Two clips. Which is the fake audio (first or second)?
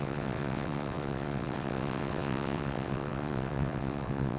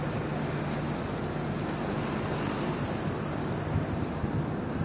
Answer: first